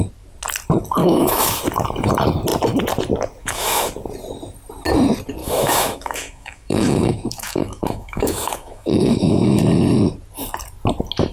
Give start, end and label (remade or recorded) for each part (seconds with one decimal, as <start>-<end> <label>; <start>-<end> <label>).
0.0-1.0 recorded; 1.0-1.6 remade; 1.6-3.4 recorded; 3.4-3.9 remade; 3.9-5.4 recorded; 5.4-9.6 remade; 9.6-11.3 recorded